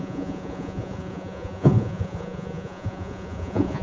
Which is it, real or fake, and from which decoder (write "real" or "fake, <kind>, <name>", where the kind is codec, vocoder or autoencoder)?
fake, vocoder, Vocos